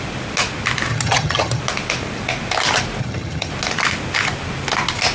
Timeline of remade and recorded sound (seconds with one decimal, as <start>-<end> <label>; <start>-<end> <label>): 0.0-0.9 recorded; 0.9-1.6 remade; 1.6-3.0 recorded; 3.0-3.5 remade; 3.5-5.1 recorded